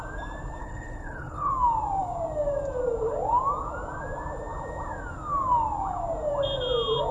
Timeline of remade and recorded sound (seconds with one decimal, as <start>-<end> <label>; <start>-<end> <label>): 0.0-0.6 recorded; 0.6-1.5 remade; 1.5-7.1 recorded